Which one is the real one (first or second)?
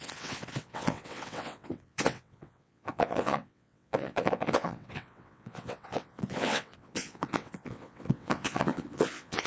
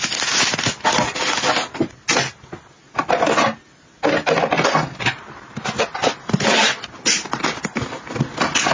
second